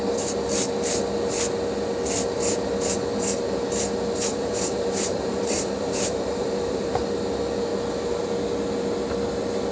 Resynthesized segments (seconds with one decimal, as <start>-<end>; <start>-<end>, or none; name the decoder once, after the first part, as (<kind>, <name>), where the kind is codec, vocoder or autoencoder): 4.3-7.0 (vocoder, BigVGAN v2)